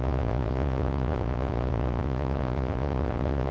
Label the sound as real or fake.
fake